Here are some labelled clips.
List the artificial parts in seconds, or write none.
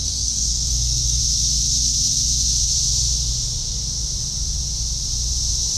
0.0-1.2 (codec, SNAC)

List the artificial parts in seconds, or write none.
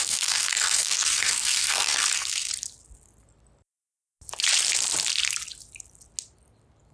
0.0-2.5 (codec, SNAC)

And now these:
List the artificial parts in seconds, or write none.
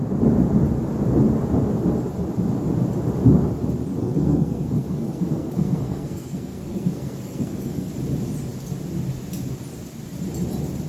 4.0-7.9 (codec, SNAC)